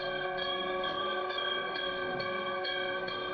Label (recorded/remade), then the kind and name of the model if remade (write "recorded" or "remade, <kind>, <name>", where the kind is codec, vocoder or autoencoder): remade, codec, SNAC